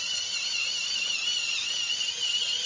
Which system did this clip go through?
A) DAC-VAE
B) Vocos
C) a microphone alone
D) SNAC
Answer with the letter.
C